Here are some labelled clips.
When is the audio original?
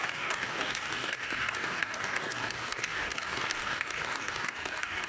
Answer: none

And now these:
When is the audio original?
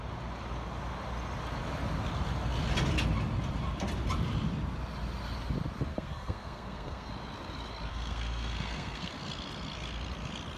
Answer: 0.0-5.9; 7.1-7.9; 9.1-10.6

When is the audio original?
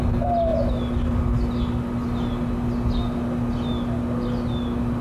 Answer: 0.0-5.0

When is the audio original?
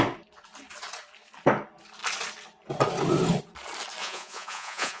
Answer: 0.0-4.0